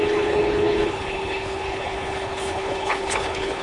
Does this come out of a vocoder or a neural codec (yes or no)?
yes